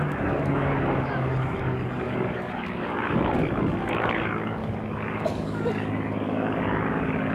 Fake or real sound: fake